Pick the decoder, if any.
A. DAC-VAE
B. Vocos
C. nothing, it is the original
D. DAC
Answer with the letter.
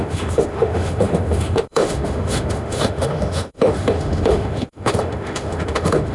A